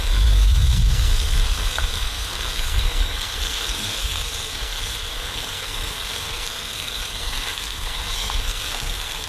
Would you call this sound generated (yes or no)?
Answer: yes